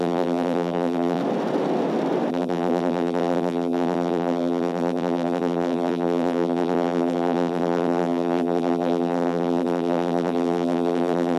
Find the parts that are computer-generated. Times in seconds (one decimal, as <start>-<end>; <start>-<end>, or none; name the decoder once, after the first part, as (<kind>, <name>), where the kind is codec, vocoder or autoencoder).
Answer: 0.0-1.2 (vocoder, BigVGAN v2); 2.3-11.4